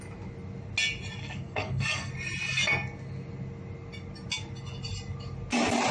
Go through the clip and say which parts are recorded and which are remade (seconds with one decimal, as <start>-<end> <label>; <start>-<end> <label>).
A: 0.0-1.2 recorded; 1.2-2.1 remade; 2.1-5.9 recorded